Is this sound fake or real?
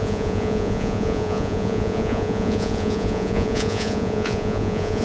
fake